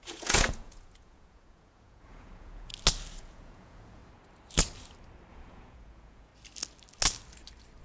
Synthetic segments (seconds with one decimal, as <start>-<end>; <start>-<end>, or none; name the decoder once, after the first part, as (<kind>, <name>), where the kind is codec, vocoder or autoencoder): 0.0-2.7 (vocoder, Vocos); 3.2-4.0; 5.3-6.3